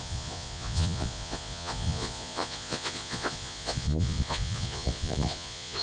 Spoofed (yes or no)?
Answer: yes